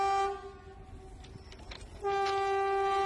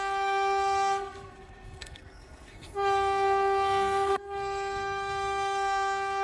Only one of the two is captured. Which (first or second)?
first